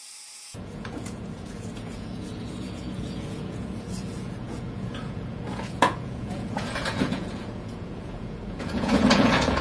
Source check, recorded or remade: remade